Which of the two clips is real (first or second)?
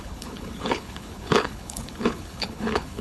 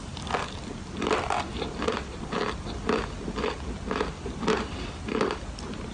second